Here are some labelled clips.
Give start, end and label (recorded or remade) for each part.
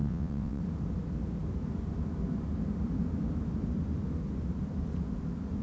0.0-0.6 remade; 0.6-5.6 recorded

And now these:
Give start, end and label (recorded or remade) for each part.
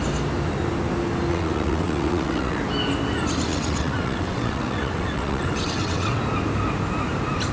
0.0-1.3 recorded; 1.3-2.6 remade; 2.6-3.5 recorded; 3.5-6.2 remade; 6.2-7.5 recorded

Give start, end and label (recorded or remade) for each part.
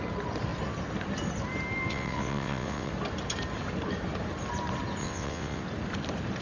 0.0-1.9 recorded; 1.9-2.9 remade; 2.9-5.0 recorded; 5.0-5.6 remade; 5.6-6.4 recorded